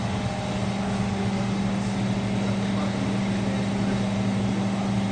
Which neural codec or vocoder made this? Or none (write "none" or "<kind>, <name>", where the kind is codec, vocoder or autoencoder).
none